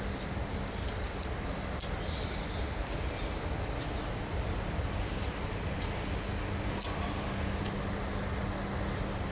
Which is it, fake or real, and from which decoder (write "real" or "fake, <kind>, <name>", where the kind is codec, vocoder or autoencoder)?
real